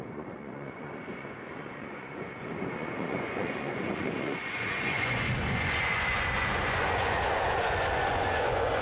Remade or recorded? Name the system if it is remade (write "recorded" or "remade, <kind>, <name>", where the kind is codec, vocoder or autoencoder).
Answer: remade, vocoder, Vocos